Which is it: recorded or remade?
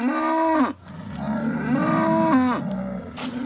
recorded